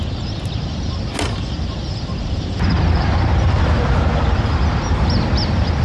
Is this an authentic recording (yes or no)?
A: yes